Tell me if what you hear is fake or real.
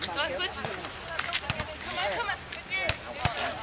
real